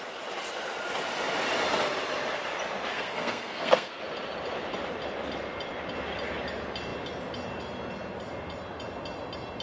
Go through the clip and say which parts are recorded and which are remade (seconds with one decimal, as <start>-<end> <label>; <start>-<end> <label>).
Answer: 0.0-2.9 recorded; 2.9-4.0 remade; 4.0-9.6 recorded